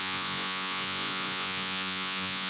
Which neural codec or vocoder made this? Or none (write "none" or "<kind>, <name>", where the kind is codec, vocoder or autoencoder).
vocoder, Vocos